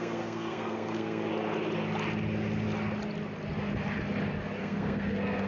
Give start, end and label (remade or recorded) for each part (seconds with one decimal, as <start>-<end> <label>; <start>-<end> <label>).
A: 0.0-1.3 remade; 1.3-4.6 recorded; 4.6-5.5 remade